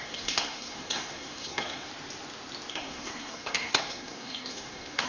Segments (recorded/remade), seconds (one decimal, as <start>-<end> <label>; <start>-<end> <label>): 0.0-1.9 remade; 1.9-2.7 recorded; 2.7-5.1 remade